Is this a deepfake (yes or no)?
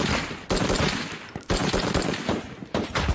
no